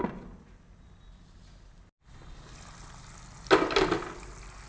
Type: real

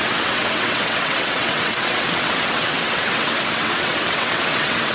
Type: fake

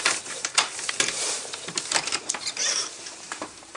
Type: fake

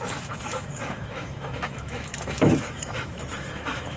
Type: fake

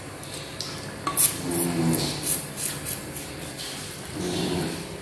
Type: real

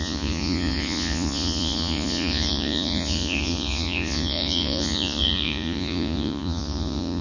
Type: fake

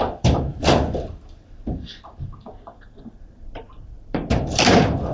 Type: fake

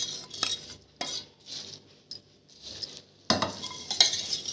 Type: real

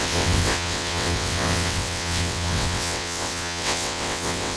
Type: fake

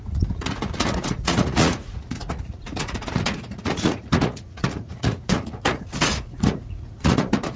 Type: fake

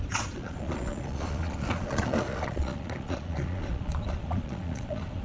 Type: fake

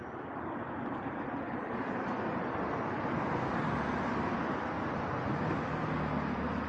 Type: real